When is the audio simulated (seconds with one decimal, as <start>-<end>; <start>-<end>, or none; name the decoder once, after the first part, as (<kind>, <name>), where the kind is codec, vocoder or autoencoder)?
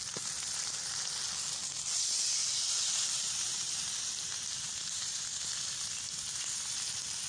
2.4-3.9 (vocoder, BigVGAN v2)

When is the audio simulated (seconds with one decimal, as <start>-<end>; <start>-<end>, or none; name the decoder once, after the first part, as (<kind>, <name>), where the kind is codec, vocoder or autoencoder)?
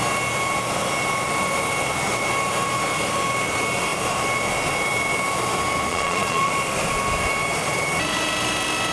5.9-6.5 (vocoder, Vocos)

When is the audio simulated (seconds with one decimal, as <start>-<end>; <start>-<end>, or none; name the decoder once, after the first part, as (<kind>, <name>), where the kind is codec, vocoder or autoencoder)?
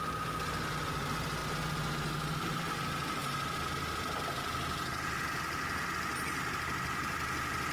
none